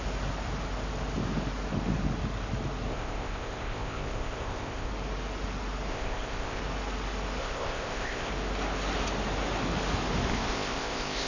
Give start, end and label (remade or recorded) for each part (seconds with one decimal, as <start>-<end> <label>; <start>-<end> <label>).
0.0-2.9 recorded; 2.9-4.9 remade; 4.9-5.9 recorded; 5.9-6.6 remade; 6.6-7.4 recorded; 7.4-8.3 remade; 8.3-10.3 recorded; 10.3-11.3 remade